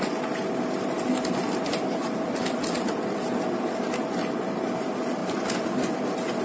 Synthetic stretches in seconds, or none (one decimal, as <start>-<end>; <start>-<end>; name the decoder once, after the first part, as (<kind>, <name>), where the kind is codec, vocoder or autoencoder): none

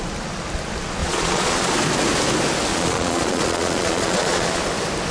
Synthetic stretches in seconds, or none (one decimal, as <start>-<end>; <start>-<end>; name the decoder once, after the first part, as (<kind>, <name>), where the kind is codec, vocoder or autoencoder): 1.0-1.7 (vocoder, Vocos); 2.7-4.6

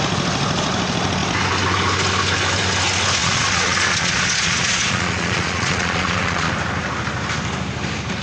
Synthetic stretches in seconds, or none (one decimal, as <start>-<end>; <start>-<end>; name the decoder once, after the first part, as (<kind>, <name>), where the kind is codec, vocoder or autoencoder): 3.2-6.5 (vocoder, Vocos)

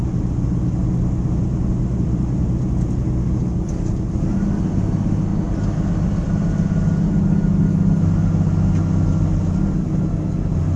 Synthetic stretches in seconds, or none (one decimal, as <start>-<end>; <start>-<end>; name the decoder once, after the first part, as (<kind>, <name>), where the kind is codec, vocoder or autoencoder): none

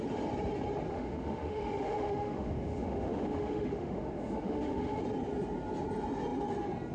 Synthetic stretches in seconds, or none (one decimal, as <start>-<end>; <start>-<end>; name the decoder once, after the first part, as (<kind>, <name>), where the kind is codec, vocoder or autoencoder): 0.9-5.0 (autoencoder, DAC-VAE)

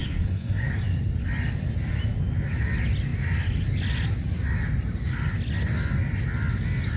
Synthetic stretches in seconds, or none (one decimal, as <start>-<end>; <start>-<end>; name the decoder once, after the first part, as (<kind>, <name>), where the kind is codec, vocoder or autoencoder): 0.0-0.7 (codec, SNAC)